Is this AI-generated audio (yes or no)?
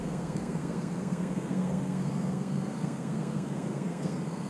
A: yes